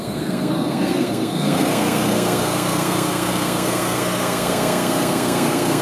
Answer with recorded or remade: remade